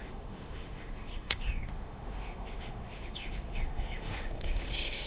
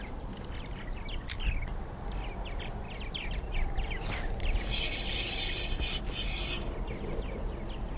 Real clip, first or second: second